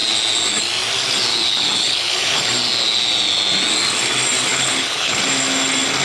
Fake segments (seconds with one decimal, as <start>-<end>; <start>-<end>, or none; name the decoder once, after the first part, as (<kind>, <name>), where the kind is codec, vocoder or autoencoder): 1.3-2.5 (codec, HILCodec); 4.5-5.2